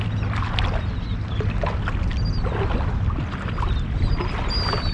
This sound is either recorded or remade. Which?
recorded